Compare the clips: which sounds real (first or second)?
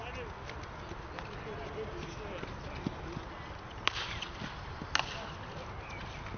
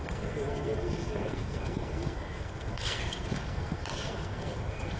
first